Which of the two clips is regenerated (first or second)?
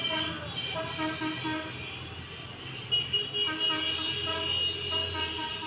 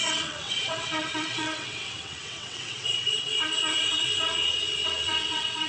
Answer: second